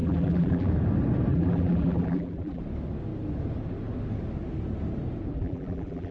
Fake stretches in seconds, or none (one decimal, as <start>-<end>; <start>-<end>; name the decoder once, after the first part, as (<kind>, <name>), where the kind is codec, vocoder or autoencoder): 0.0-0.7 (vocoder, BigVGAN v2); 1.3-2.6; 5.3-6.1